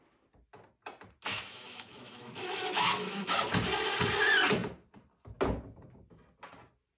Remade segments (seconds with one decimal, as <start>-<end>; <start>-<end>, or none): 1.3-3.4